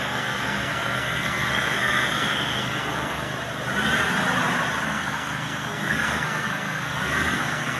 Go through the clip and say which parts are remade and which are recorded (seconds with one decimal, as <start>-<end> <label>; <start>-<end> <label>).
0.0-3.3 remade; 3.3-4.8 recorded; 4.8-7.8 remade